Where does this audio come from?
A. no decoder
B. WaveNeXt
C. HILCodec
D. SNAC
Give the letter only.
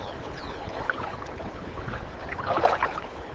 C